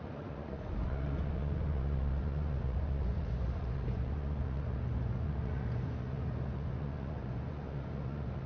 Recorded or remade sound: remade